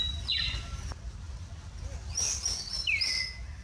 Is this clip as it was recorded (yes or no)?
yes